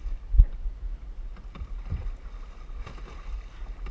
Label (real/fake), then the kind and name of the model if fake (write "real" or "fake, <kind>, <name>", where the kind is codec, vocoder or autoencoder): real